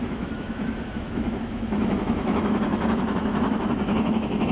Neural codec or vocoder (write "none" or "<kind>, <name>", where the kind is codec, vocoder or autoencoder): autoencoder, DAC-VAE